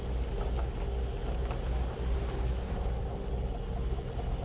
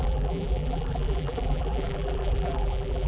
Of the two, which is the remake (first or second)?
second